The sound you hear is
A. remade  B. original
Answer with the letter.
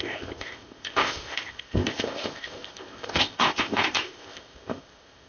A